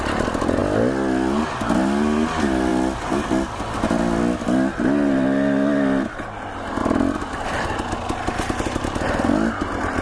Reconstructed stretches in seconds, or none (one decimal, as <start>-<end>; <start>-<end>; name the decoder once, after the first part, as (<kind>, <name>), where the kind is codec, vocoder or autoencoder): none